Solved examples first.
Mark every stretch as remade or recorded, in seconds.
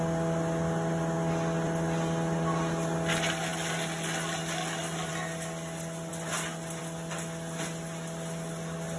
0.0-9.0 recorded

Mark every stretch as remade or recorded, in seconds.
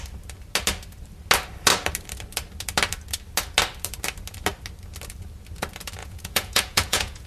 0.0-6.0 recorded; 6.0-7.3 remade